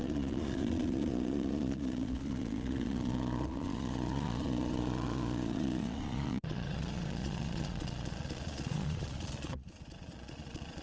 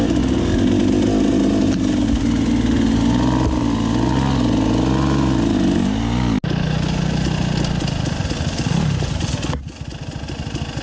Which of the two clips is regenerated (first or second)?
first